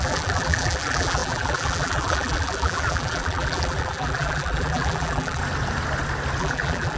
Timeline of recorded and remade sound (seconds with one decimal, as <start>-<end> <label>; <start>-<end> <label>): 0.0-5.4 remade; 5.4-6.4 recorded; 6.4-7.0 remade